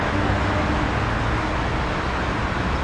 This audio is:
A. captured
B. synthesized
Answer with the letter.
A